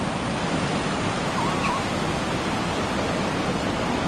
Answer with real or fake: real